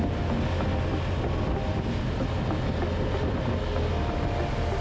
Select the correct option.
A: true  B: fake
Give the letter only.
A